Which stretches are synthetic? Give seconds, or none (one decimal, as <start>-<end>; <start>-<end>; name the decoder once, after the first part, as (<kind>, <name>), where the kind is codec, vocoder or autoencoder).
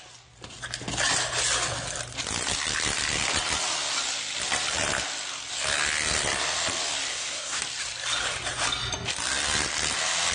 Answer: 7.1-7.6 (codec, SNAC)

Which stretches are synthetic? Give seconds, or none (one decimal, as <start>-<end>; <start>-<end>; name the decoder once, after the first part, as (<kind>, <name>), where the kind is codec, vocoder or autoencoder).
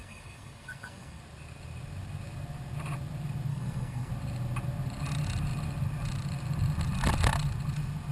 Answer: 0.0-1.2 (codec, SNAC); 3.5-4.1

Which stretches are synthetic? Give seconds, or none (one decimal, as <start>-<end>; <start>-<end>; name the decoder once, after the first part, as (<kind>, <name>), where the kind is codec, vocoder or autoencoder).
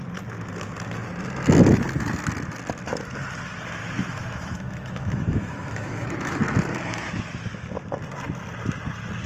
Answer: 3.8-6.4 (autoencoder, DAC-VAE)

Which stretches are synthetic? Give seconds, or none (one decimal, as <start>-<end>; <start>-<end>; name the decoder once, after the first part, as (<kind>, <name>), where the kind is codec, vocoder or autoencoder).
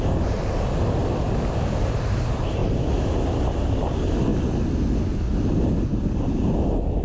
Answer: 0.0-1.0 (vocoder, BigVGAN v2); 1.7-2.6; 3.2-4.3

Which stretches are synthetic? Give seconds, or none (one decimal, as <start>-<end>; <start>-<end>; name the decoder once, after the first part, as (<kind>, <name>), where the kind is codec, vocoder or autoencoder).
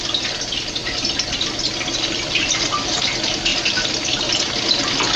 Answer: 3.5-4.6 (vocoder, BigVGAN v2)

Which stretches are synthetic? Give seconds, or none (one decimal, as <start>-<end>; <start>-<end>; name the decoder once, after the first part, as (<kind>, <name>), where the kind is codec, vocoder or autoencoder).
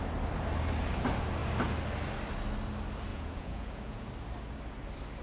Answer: 3.1-4.1 (vocoder, Vocos)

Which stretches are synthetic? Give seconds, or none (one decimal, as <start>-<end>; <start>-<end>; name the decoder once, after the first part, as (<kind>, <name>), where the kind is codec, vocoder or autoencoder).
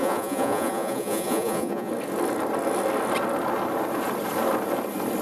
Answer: 0.0-1.9 (vocoder, Vocos)